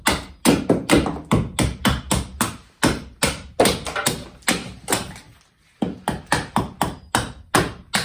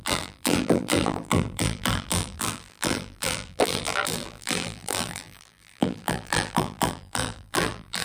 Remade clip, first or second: second